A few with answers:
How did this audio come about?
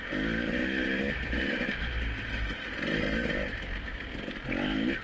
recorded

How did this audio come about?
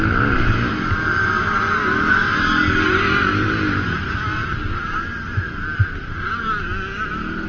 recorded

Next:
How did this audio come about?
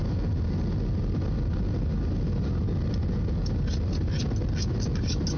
recorded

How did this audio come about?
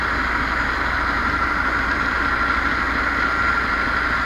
recorded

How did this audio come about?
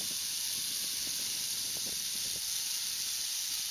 recorded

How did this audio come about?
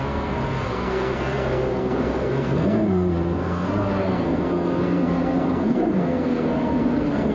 remade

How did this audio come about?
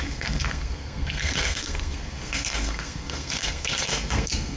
remade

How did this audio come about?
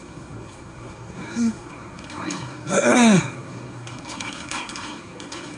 remade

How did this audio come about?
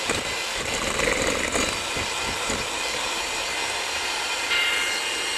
recorded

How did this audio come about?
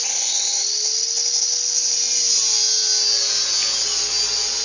recorded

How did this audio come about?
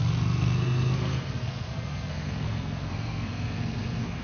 remade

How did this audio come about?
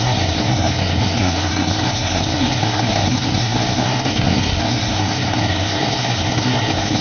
remade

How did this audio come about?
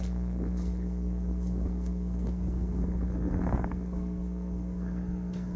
remade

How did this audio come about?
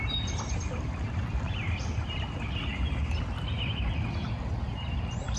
recorded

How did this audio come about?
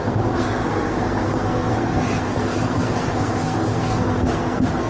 remade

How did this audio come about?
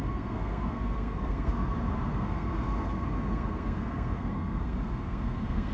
remade